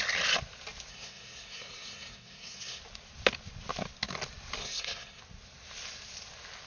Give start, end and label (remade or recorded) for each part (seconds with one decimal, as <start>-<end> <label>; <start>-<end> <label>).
0.0-0.9 recorded; 0.9-2.8 remade; 2.8-4.6 recorded; 4.6-5.2 remade; 5.2-6.7 recorded